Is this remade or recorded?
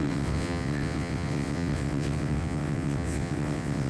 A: remade